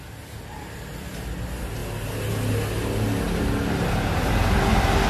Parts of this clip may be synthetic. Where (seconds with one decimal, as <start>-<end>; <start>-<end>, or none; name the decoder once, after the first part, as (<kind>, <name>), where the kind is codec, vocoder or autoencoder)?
none